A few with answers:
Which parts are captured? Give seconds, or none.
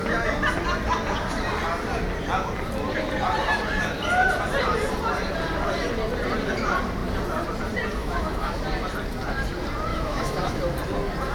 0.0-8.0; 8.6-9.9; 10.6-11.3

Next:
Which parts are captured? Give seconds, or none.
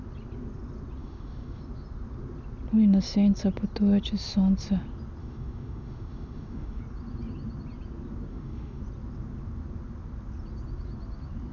0.0-1.0; 1.6-5.2; 6.8-8.3; 8.8-11.5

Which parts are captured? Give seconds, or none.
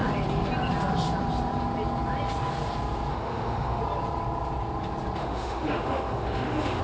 0.0-3.1; 3.8-5.2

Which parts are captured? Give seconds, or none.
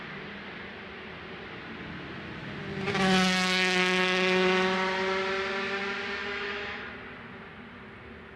0.0-6.2; 6.9-8.4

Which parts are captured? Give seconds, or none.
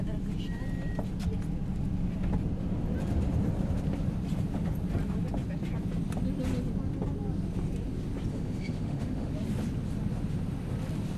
0.0-8.3; 9.3-11.2